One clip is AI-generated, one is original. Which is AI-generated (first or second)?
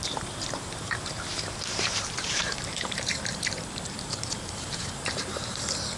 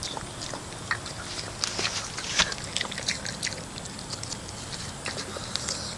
first